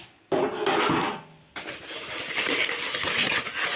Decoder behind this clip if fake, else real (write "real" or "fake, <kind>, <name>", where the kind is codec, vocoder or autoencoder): real